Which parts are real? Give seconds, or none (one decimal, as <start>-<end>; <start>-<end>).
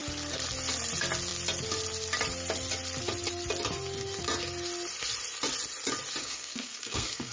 0.0-6.2